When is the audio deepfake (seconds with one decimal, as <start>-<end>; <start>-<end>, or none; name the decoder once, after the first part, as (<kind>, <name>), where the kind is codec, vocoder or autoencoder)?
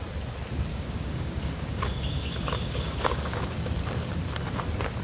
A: 0.7-3.5 (codec, DAC)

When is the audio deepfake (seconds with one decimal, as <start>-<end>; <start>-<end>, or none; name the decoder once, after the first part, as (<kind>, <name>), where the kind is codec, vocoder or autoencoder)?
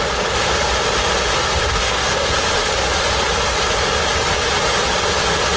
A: 1.7-2.3 (codec, DAC)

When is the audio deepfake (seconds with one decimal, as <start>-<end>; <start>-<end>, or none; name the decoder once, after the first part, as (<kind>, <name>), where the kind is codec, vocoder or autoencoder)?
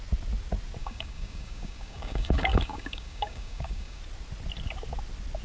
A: 0.8-4.0 (codec, DAC)